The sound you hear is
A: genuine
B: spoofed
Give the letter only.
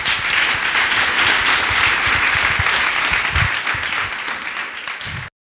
A